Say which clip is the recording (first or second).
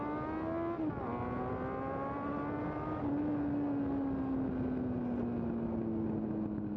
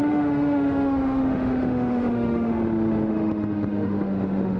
first